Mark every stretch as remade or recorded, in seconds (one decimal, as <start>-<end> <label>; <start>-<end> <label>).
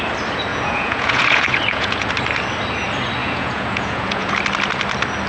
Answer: 0.0-0.5 recorded; 0.5-2.1 remade; 2.1-3.2 recorded; 3.2-4.3 remade; 4.3-5.3 recorded